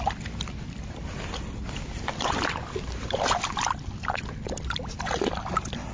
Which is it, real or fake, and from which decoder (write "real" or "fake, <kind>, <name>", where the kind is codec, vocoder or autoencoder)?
real